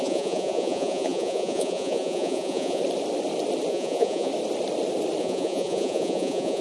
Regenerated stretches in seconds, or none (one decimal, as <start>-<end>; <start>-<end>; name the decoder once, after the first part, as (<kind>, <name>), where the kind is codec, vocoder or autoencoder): 0.0-2.8 (vocoder, Vocos); 3.7-4.3; 5.2-6.6